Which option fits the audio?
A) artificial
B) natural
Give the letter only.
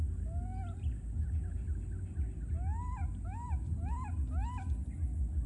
B